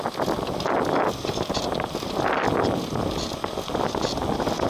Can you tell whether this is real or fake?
real